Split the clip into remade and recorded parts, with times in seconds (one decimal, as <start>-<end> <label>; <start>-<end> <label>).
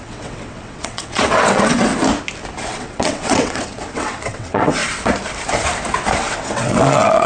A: 0.0-1.9 remade; 1.9-2.8 recorded; 2.8-4.8 remade; 4.8-6.2 recorded; 6.2-7.3 remade